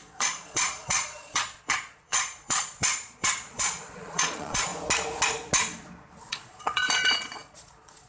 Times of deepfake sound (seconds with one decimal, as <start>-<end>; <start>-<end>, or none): 0.0-4.7; 6.3-8.1